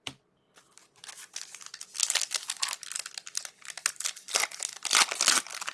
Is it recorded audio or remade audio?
recorded